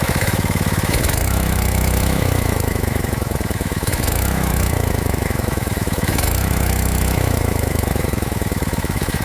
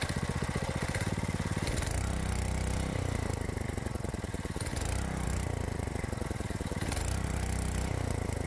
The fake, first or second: first